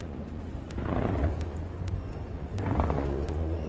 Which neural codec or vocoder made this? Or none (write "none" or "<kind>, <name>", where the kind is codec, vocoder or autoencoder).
vocoder, Vocos